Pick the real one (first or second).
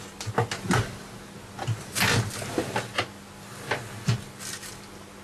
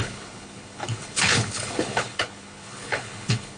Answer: first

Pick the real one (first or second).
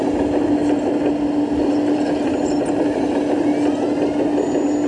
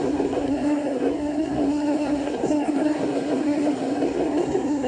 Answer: first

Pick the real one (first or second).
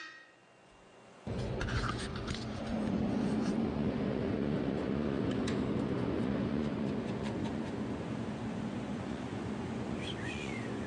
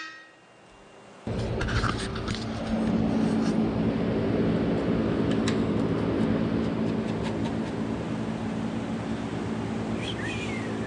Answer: second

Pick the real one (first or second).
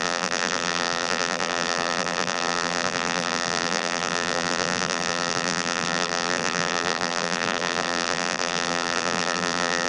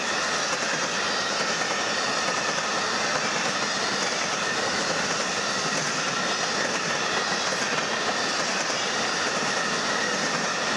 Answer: second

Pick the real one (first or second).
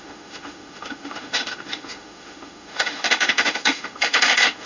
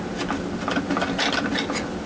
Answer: second